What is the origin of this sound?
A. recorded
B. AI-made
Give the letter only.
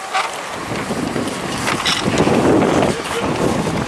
A